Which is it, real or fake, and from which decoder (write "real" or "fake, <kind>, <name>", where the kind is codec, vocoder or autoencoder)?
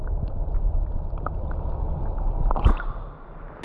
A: real